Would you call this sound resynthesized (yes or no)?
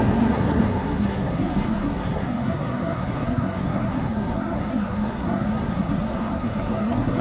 yes